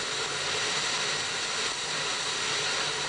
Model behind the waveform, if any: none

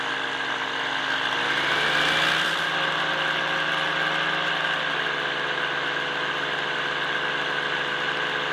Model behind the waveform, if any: none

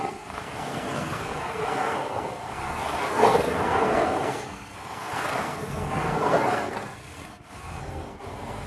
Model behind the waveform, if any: codec, SNAC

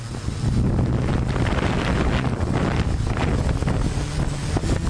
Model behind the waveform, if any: none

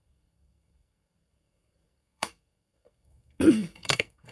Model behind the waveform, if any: codec, SNAC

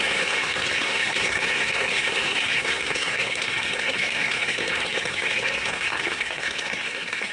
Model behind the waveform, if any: codec, SNAC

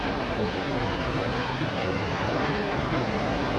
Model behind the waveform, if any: codec, SNAC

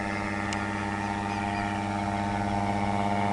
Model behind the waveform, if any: none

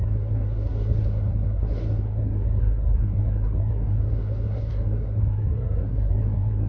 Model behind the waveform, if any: codec, SNAC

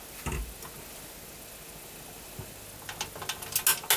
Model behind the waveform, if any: none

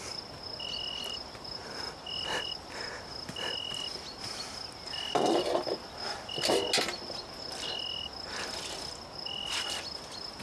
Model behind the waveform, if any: none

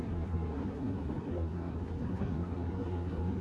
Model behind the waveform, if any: codec, SNAC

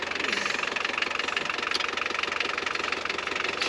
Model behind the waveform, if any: none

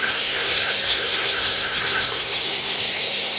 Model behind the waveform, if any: codec, SNAC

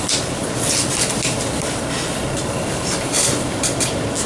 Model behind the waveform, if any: none